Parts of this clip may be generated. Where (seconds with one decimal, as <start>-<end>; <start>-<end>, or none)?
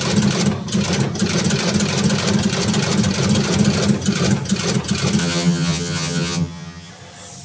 5.2-6.9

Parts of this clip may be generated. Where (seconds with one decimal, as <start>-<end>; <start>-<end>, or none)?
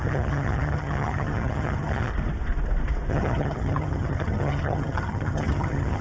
0.0-2.1; 3.1-6.0